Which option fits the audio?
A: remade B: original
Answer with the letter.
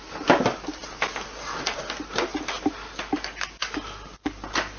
B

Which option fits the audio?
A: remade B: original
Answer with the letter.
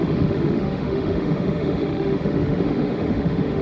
A